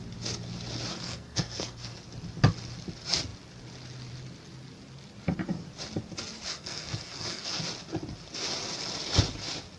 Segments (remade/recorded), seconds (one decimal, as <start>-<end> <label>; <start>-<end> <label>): 0.0-0.9 recorded; 0.9-2.0 remade; 2.0-6.5 recorded; 6.5-7.6 remade; 7.6-9.8 recorded